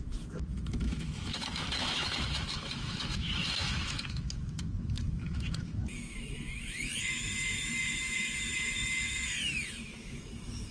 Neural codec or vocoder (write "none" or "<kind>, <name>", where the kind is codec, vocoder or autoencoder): autoencoder, DAC-VAE